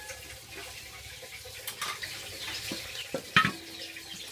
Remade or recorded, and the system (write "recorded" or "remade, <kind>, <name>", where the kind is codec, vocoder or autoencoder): recorded